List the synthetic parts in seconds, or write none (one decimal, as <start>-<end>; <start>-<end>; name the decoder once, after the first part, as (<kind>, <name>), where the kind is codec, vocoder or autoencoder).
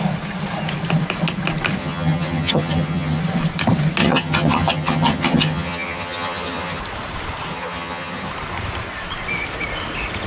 1.8-3.2 (vocoder, HiFi-GAN); 4.0-6.8; 7.5-8.3